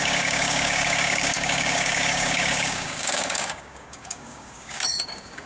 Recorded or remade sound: remade